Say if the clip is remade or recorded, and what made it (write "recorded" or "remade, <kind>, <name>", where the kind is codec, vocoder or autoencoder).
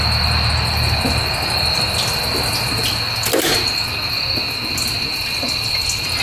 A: recorded